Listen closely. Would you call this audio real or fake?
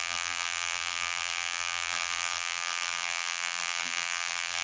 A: fake